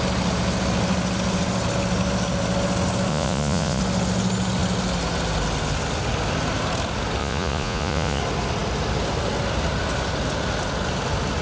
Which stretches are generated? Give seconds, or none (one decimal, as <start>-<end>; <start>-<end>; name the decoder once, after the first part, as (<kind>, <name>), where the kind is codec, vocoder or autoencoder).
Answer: 3.1-3.8 (vocoder, Vocos); 7.2-8.2